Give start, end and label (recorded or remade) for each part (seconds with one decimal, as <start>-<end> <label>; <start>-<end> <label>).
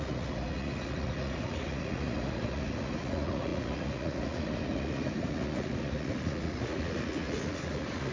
0.0-8.1 remade